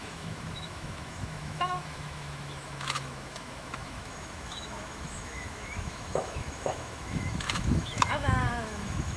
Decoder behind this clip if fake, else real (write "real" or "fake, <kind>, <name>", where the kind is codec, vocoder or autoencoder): fake, autoencoder, DAC-VAE